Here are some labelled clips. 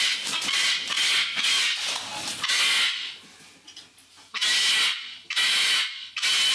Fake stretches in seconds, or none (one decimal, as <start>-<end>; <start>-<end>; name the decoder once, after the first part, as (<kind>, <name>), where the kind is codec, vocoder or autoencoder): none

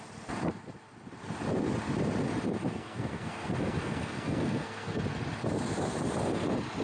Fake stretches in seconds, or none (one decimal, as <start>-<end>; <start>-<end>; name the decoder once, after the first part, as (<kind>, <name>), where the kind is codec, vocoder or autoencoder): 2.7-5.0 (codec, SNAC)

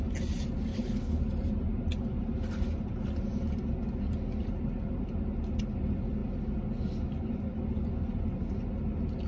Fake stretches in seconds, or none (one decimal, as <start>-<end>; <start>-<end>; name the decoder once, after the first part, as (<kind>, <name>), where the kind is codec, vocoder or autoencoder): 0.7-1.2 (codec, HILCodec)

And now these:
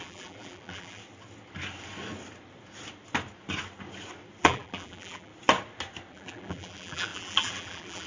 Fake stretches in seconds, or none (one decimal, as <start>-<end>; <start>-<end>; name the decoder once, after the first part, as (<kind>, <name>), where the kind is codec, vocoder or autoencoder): 0.0-1.0 (vocoder, BigVGAN v2); 4.4-5.3; 6.1-8.1

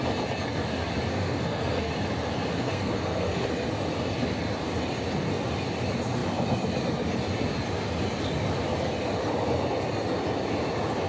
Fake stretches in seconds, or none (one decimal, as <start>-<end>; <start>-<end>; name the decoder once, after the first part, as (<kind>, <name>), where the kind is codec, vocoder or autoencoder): 1.1-1.9 (codec, SNAC); 2.5-3.5